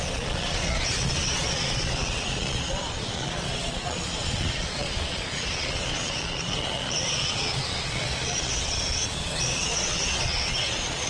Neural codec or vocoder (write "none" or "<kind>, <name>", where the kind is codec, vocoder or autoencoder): vocoder, Vocos